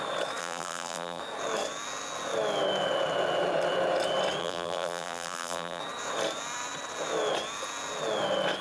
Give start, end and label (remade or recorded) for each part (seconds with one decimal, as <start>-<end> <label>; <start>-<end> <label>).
0.0-0.4 recorded; 0.4-1.2 remade; 1.2-4.4 recorded; 4.4-5.8 remade; 5.8-8.6 recorded